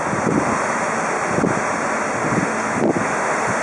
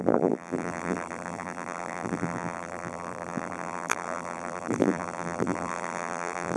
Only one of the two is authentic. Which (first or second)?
first